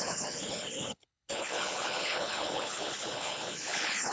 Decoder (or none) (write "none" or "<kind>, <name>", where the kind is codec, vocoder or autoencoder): codec, HILCodec